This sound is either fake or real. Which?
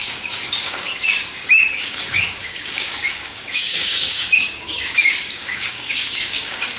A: fake